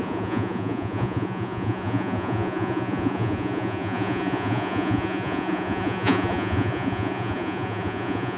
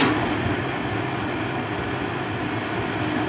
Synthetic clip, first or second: first